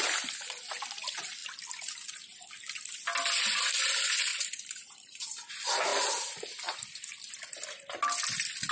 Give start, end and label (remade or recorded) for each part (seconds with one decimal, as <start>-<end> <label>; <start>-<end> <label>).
0.0-0.5 remade; 0.5-4.3 recorded; 4.3-5.5 remade; 5.5-8.7 recorded